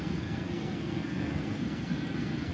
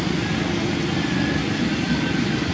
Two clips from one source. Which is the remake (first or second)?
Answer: first